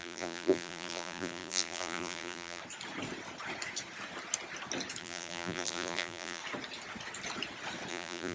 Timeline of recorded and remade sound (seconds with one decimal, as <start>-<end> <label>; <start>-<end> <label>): 0.0-2.6 remade; 2.6-5.0 recorded; 5.0-6.4 remade; 6.4-7.9 recorded; 7.9-8.3 remade

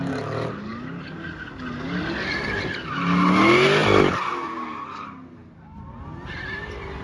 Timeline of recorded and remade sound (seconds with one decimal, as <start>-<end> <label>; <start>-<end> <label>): 0.0-7.0 recorded